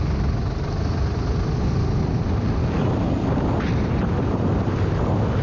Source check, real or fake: real